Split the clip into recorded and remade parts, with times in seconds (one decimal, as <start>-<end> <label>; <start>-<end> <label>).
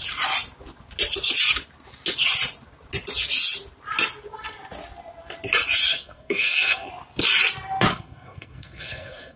0.0-5.9 recorded; 5.9-6.9 remade; 6.9-7.9 recorded; 7.9-9.4 remade